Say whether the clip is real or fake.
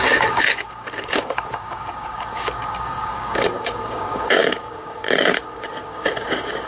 fake